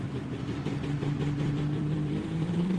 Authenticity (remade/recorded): remade